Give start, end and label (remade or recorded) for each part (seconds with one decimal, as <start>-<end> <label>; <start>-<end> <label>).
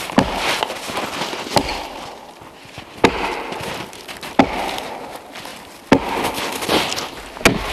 0.0-7.7 recorded